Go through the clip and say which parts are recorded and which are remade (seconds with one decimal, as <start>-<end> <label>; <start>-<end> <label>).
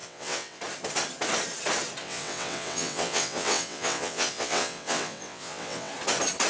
0.0-0.6 remade; 0.6-2.0 recorded; 2.0-5.9 remade; 5.9-6.5 recorded